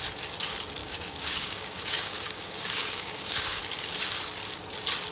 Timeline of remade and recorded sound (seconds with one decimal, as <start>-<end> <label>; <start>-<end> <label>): 0.0-0.8 recorded; 0.8-3.6 remade; 3.6-5.1 recorded